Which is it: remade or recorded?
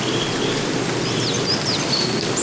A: recorded